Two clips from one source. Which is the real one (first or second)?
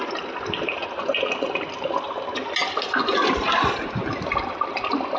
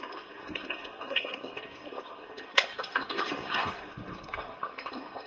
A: first